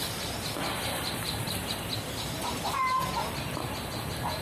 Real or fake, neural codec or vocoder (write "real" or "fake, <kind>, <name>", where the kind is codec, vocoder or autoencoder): real